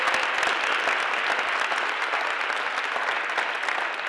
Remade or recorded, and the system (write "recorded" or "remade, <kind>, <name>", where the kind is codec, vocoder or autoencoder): recorded